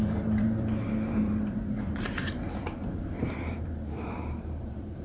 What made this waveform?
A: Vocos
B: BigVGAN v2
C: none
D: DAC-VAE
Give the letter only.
B